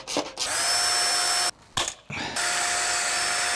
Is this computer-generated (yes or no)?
no